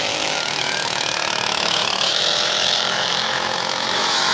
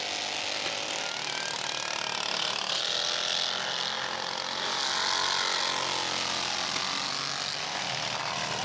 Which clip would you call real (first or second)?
second